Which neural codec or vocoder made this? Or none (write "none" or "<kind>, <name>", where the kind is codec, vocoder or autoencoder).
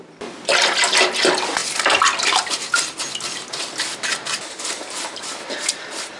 none